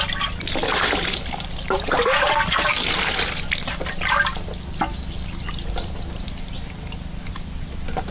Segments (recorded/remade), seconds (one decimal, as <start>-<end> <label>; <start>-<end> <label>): 0.0-8.1 recorded